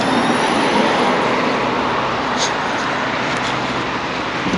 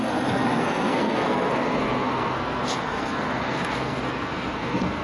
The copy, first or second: second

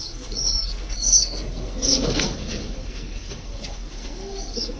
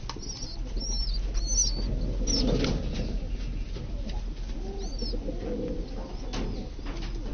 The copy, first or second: first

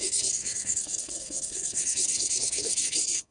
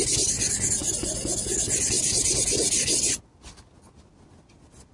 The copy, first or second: first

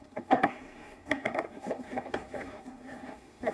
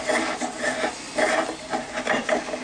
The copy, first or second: first